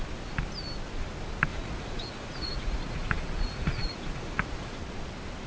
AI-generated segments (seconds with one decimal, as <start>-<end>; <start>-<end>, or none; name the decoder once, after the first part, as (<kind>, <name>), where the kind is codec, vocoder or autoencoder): 1.5-4.8 (vocoder, Vocos)